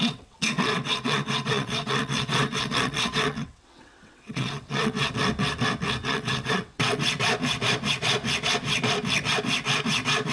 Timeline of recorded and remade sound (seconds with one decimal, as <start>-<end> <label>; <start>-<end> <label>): 0.0-5.1 remade; 5.1-6.0 recorded; 6.0-7.0 remade; 7.0-10.3 recorded